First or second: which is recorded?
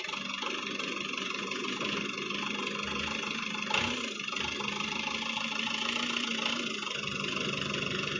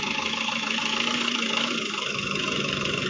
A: first